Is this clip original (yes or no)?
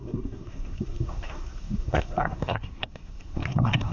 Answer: no